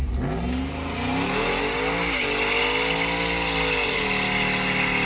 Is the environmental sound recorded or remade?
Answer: recorded